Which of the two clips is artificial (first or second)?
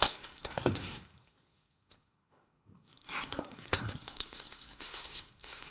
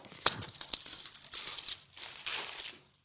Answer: first